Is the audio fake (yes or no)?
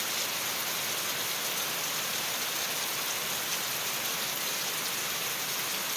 no